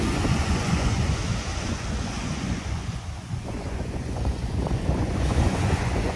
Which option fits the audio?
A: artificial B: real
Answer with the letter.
A